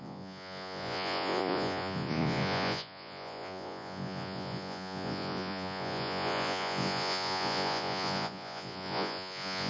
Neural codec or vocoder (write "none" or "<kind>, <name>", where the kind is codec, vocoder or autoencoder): vocoder, Vocos